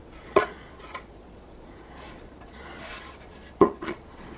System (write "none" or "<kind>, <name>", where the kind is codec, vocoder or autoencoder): vocoder, Vocos